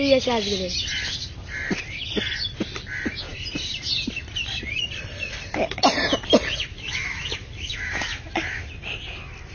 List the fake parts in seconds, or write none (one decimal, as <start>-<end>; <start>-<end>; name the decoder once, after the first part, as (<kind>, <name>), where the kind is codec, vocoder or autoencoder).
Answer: 6.7-8.7 (autoencoder, DAC-VAE)